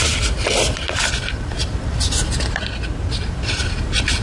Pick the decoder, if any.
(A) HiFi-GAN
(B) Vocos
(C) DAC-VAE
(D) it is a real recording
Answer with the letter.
D